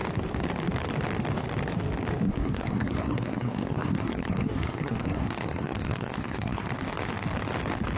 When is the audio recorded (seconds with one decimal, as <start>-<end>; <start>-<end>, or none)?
0.0-2.3; 6.7-8.0